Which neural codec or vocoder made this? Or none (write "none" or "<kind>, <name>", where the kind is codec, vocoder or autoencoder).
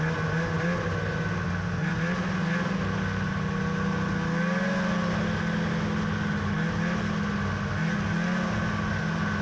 none